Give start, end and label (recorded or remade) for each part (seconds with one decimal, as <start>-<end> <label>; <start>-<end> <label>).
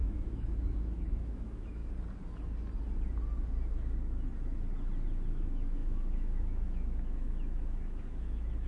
0.0-1.8 remade; 1.8-5.3 recorded; 5.3-8.7 remade